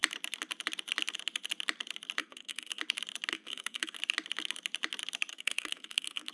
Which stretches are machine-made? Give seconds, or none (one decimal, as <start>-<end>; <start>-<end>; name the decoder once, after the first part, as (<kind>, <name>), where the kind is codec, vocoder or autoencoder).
2.2-2.8 (codec, SNAC); 3.3-4.0; 5.3-6.3